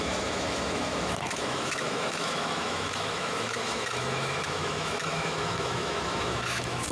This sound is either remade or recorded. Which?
remade